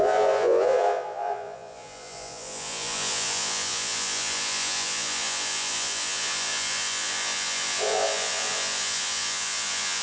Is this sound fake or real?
fake